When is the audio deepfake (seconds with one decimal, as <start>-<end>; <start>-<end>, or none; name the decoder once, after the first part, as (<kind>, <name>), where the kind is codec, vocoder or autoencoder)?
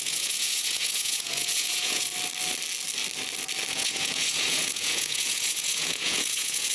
0.0-2.1 (vocoder, Vocos); 3.7-6.7